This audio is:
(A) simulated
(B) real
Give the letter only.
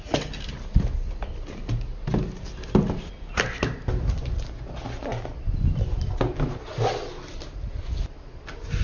B